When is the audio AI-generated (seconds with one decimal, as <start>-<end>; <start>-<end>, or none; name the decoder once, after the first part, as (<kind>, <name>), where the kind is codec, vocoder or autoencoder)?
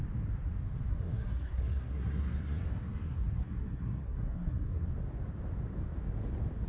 0.9-4.9 (codec, SNAC)